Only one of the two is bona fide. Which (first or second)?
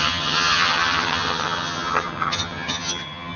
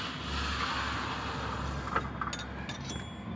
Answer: second